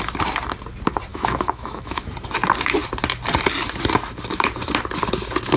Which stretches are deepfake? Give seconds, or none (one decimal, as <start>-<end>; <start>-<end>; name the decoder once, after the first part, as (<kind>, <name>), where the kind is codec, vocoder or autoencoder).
1.1-2.1 (autoencoder, DAC-VAE)